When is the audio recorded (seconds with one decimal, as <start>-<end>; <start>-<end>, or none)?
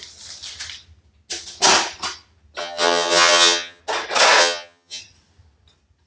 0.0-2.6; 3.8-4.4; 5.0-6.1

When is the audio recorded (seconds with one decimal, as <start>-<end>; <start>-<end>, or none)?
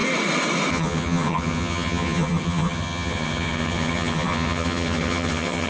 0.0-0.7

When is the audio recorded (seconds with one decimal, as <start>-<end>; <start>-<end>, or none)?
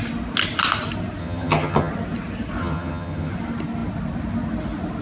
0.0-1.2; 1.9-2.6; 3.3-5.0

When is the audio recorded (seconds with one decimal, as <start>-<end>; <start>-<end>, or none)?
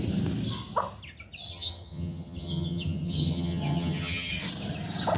0.0-1.5; 4.3-5.2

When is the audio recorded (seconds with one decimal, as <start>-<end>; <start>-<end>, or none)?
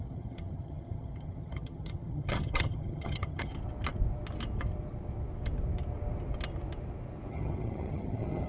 3.5-7.3